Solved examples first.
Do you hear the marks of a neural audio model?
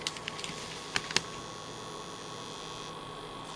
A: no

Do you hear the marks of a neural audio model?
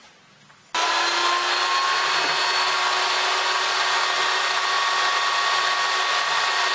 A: no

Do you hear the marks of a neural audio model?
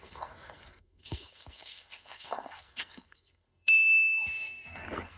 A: yes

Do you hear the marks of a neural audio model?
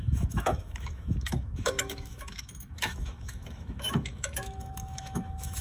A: yes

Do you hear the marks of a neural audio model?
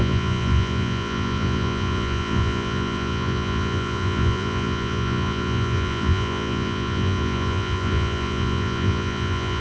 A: yes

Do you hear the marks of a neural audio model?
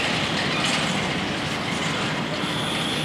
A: no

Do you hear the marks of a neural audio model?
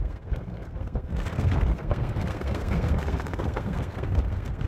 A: yes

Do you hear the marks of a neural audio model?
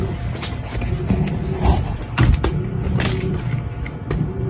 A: no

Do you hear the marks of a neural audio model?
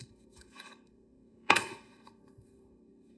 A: yes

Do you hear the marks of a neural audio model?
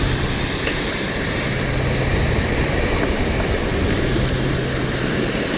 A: no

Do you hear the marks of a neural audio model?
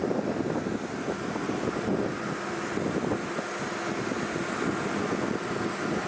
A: no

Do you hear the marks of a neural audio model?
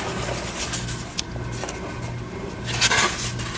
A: no